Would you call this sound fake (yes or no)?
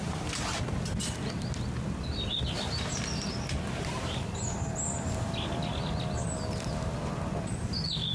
no